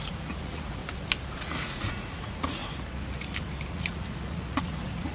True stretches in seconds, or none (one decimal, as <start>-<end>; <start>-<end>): 0.8-1.4; 2.6-3.7